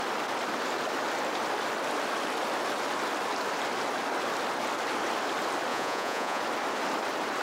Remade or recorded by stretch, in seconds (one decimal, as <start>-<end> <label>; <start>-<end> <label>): 0.0-5.7 recorded; 5.7-6.4 remade; 6.4-7.4 recorded